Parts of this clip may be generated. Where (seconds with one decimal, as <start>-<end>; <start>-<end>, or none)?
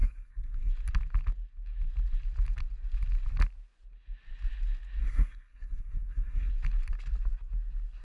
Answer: 0.0-0.7; 5.0-6.5